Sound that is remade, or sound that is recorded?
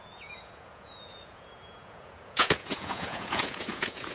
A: remade